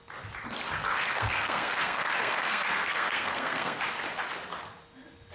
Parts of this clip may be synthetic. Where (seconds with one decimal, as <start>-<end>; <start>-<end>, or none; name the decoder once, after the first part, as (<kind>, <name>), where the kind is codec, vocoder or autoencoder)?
0.8-3.8 (codec, SNAC)